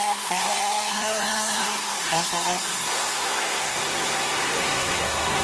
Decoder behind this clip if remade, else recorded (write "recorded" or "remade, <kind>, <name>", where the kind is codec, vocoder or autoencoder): remade, codec, SNAC